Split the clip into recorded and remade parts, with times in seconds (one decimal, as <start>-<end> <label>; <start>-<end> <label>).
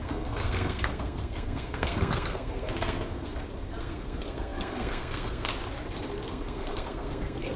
0.0-3.3 remade; 3.3-3.8 recorded; 3.8-5.5 remade; 5.5-6.3 recorded; 6.3-7.6 remade